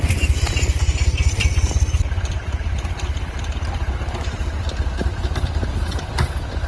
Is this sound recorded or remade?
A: remade